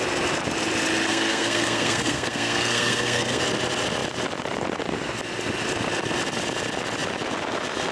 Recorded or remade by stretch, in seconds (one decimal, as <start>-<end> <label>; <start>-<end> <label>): 0.0-1.1 recorded; 1.1-3.4 remade; 3.4-7.9 recorded